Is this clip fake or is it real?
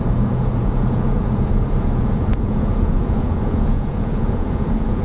fake